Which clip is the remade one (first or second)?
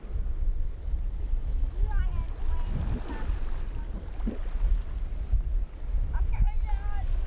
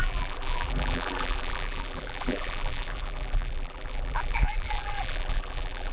second